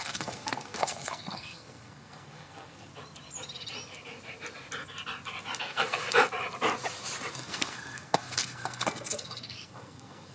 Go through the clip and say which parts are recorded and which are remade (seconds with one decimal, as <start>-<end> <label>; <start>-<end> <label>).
0.0-2.9 remade; 2.9-5.6 recorded; 5.6-6.0 remade; 6.0-7.3 recorded; 7.3-10.3 remade